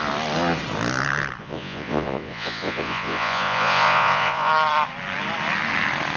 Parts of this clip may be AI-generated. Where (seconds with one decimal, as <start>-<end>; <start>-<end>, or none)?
1.4-4.5